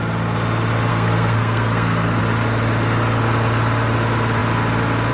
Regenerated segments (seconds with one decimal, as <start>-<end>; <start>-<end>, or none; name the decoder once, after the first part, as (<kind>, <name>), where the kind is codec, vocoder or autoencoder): 0.9-2.2 (codec, SNAC)